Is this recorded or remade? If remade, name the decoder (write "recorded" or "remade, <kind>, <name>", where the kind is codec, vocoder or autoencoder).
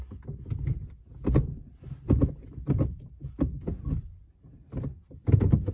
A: recorded